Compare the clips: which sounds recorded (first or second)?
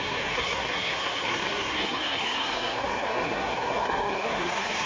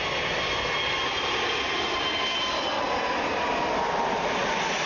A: second